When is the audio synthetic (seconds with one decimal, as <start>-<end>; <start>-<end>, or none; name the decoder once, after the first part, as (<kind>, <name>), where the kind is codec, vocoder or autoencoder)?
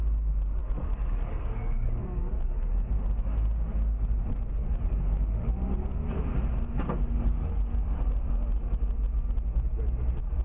0.6-2.9 (codec, DAC); 4.6-5.5